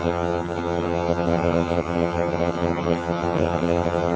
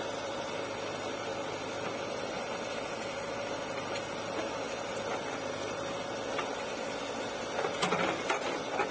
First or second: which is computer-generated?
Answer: first